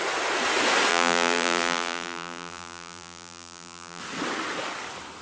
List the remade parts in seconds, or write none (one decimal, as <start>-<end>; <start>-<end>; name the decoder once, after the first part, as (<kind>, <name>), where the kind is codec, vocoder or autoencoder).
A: 0.9-4.0 (vocoder, BigVGAN v2)